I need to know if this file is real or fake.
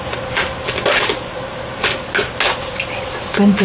real